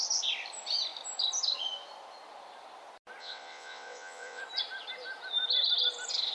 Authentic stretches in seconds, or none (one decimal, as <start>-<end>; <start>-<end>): 0.0-3.2; 4.4-6.3